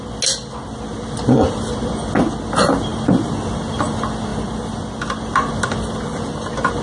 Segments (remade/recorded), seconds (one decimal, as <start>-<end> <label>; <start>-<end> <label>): 0.0-6.8 recorded